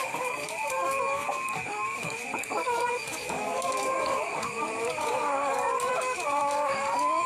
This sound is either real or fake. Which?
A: fake